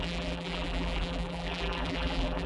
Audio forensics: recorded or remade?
remade